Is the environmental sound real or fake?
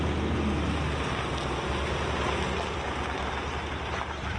real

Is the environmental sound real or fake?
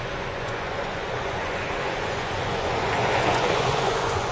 fake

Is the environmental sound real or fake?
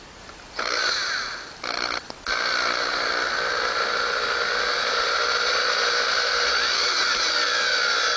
real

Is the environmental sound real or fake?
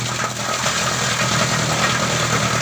real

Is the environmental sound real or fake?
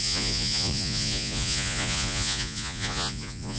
fake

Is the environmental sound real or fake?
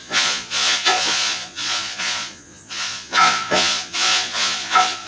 fake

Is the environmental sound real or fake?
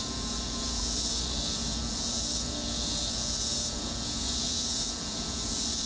fake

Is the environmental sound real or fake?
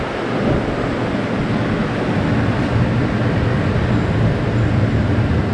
real